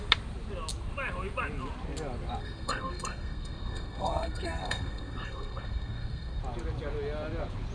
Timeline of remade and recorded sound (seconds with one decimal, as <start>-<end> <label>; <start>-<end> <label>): 0.0-2.4 recorded; 2.4-6.4 remade; 6.4-7.7 recorded

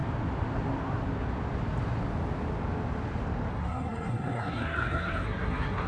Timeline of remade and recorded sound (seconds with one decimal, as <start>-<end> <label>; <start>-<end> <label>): 0.0-3.5 recorded; 3.5-5.9 remade